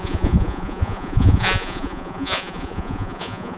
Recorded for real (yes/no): no